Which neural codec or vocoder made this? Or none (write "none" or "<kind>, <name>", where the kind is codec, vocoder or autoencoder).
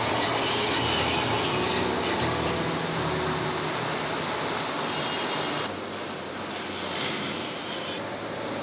none